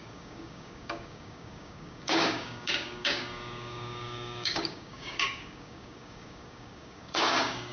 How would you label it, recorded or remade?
remade